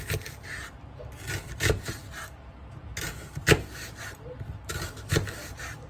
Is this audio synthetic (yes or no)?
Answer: no